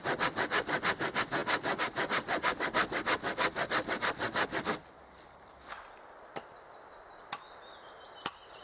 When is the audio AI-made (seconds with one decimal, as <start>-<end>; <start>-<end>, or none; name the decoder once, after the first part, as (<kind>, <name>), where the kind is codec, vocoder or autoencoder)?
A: none